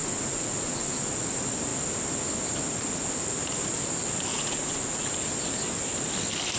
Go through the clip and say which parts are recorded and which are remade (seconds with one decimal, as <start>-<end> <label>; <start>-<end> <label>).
0.0-1.1 remade; 1.1-4.3 recorded; 4.3-5.1 remade; 5.1-6.6 recorded